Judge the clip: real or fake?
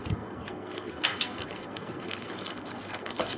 fake